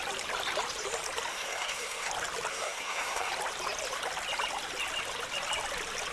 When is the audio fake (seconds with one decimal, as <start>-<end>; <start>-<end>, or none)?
1.3-2.1; 2.5-3.3